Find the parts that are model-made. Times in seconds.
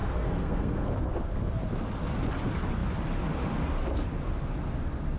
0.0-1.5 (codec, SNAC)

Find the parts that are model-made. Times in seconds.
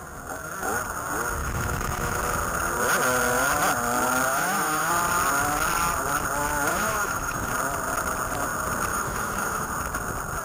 1.4-2.2 (autoencoder, DAC-VAE); 4.3-4.9; 6.7-7.5; 8.9-9.7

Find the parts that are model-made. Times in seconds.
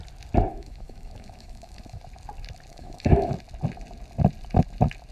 0.5-2.0 (autoencoder, DAC-VAE); 2.7-3.3